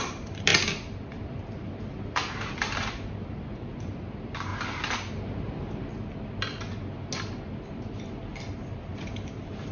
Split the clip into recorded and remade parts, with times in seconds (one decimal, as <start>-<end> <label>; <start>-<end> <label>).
0.0-0.5 remade; 0.5-1.1 recorded; 1.1-4.5 remade; 4.5-7.4 recorded; 7.4-8.2 remade; 8.2-8.9 recorded; 8.9-9.7 remade